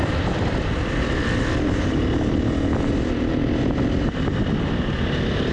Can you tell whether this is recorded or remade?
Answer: recorded